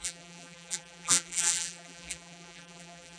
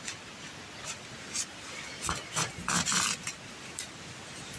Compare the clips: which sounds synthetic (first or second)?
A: first